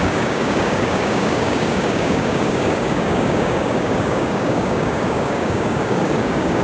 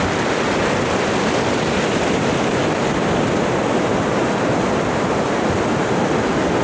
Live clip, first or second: second